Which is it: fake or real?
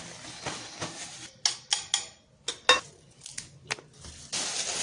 real